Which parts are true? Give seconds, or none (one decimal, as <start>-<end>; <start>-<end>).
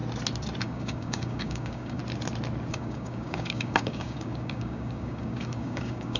0.0-0.6; 2.0-2.7